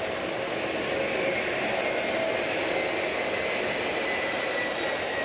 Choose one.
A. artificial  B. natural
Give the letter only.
B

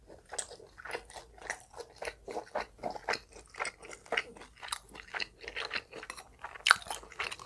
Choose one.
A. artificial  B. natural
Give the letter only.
B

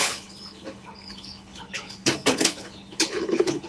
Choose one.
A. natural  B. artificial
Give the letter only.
B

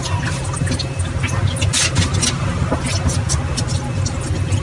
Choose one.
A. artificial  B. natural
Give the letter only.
B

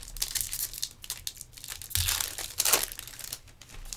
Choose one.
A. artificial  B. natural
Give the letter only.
B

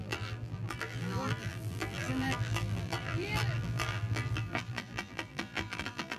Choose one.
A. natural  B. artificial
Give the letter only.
B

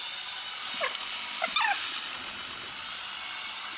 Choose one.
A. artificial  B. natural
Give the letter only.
B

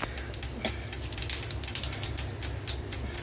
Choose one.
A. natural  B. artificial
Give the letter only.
A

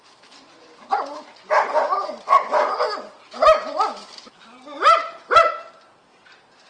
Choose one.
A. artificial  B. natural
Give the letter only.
B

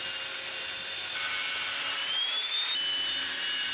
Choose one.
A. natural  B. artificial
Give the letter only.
A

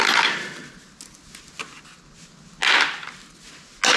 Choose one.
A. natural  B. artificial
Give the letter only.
A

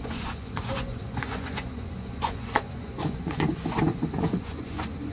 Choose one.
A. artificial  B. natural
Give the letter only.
A